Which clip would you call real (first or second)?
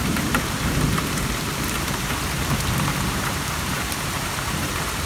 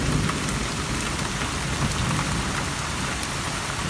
second